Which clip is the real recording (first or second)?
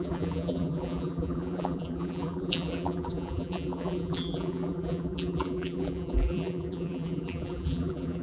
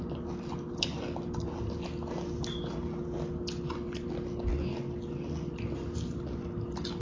second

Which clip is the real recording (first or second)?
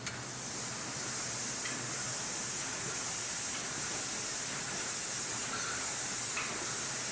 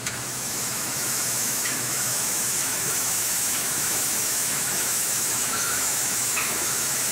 first